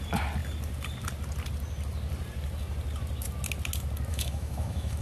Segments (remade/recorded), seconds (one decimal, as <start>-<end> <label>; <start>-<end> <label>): 0.0-4.1 recorded; 4.1-5.0 remade